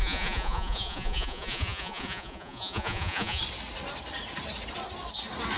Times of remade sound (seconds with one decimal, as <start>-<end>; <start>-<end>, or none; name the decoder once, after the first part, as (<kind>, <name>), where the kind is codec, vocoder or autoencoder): 0.0-3.4 (vocoder, Vocos)